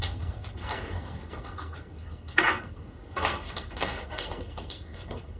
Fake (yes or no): yes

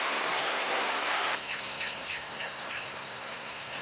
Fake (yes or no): yes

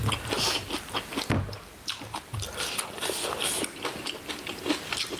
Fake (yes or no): no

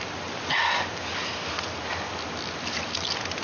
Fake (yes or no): no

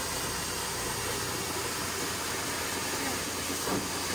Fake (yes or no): no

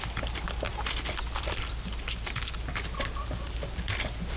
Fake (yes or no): no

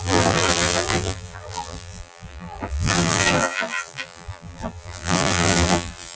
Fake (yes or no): yes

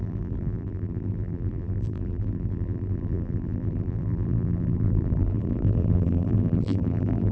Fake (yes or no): yes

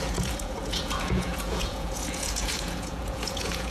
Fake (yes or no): yes